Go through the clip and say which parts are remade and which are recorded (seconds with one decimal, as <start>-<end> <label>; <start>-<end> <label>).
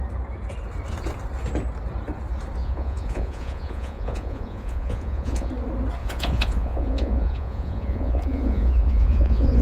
0.0-2.6 recorded; 2.6-5.5 remade; 5.5-6.0 recorded; 6.0-9.6 remade